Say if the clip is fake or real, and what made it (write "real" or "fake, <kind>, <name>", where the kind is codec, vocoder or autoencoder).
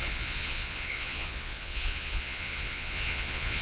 fake, vocoder, Vocos